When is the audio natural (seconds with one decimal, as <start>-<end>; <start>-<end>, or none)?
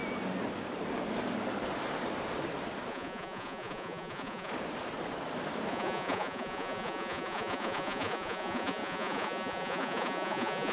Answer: 0.0-2.9; 4.5-5.7